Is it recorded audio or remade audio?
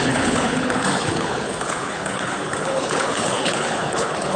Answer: remade